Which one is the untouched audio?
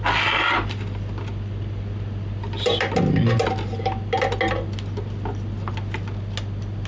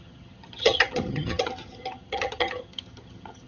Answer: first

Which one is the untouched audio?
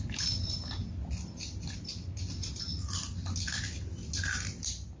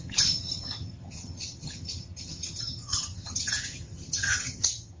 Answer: first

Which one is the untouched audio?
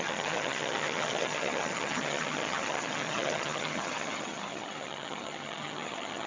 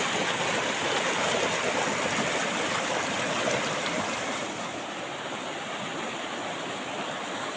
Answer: second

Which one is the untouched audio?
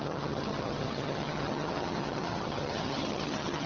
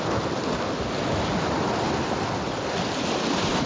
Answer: second